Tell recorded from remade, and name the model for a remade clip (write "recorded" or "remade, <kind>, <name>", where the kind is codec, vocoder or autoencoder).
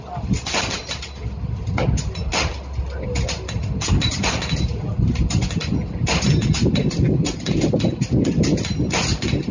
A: recorded